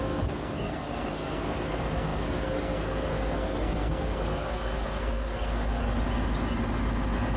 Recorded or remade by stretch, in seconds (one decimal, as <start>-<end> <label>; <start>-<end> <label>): 0.0-5.8 remade; 5.8-7.4 recorded